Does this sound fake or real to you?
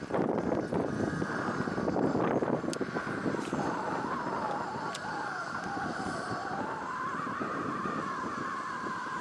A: real